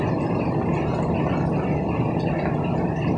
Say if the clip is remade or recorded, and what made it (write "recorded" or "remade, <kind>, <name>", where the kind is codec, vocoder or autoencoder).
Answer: recorded